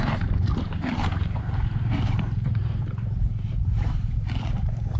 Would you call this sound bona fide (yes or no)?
no